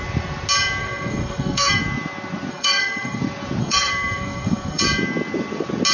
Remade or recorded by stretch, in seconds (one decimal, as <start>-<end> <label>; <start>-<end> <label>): 0.0-0.8 recorded; 0.8-1.8 remade; 1.8-2.5 recorded; 2.5-3.2 remade; 3.2-3.6 recorded; 3.6-4.8 remade; 4.8-5.9 recorded